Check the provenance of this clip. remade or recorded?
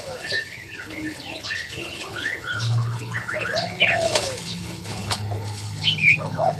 remade